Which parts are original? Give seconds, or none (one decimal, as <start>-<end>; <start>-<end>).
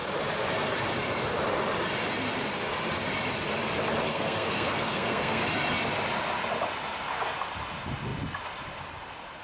0.0-4.1; 5.4-9.4